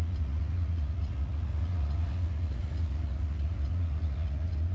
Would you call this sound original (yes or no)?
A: no